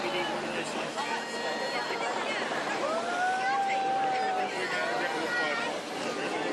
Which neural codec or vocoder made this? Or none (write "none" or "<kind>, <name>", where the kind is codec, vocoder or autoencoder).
none